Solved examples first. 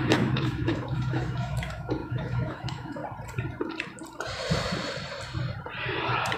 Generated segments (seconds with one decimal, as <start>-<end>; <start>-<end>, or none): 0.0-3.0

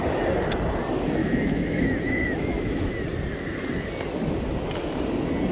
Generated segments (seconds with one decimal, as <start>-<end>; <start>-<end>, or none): 1.2-2.9

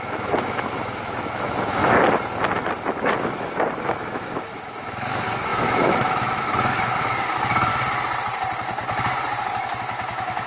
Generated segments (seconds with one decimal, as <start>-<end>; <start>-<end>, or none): 0.0-1.8; 3.0-7.7; 9.8-10.5